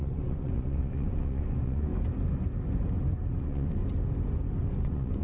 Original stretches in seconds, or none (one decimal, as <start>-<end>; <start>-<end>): 1.9-3.4; 3.8-4.7